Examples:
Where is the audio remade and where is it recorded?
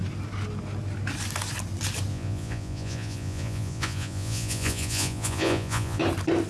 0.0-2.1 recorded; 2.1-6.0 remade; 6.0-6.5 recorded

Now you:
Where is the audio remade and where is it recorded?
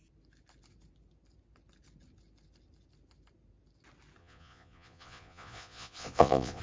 0.0-4.2 recorded; 4.2-6.6 remade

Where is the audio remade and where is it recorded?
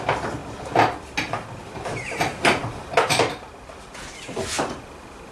0.0-5.3 recorded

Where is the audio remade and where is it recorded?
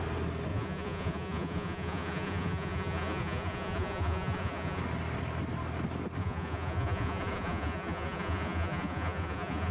0.0-0.5 recorded; 0.5-4.8 remade; 4.8-6.2 recorded; 6.2-9.7 remade